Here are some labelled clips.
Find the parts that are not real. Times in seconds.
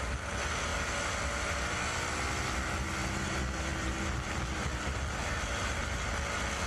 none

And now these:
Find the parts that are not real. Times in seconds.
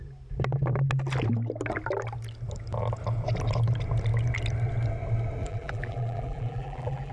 5.4-7.1 (vocoder, BigVGAN v2)